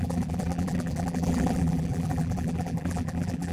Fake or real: fake